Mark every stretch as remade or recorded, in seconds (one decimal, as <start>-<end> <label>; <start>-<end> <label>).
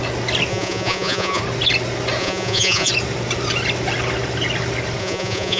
0.0-0.5 recorded; 0.5-1.4 remade; 1.4-2.2 recorded; 2.2-2.9 remade; 2.9-5.0 recorded; 5.0-5.6 remade